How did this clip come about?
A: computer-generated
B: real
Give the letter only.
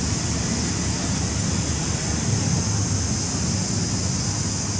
B